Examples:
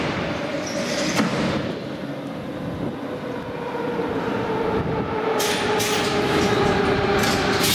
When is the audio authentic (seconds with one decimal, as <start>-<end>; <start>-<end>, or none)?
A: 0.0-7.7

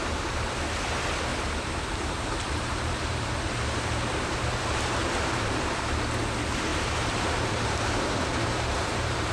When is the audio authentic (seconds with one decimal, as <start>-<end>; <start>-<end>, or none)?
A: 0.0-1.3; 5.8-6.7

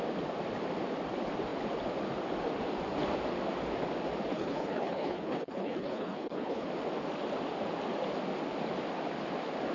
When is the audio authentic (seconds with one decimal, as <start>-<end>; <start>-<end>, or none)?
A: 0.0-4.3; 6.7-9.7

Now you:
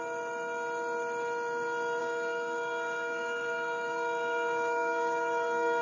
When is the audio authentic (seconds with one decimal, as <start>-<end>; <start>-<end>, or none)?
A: 0.0-2.0

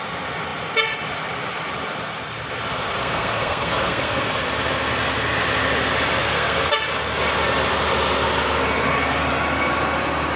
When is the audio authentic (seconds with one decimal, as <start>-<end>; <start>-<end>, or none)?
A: 0.0-3.0; 4.3-6.2; 6.7-10.4

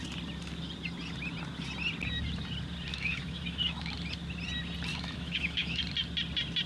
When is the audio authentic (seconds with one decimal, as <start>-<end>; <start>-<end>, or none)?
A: 0.0-2.9; 3.9-4.9; 5.8-6.7